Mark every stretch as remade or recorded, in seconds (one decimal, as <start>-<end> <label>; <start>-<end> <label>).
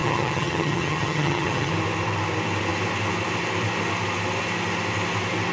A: 0.0-1.7 remade; 1.7-5.5 recorded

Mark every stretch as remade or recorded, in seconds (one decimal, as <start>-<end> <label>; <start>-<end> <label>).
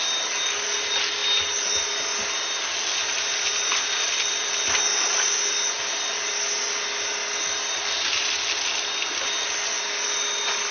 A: 0.0-10.7 recorded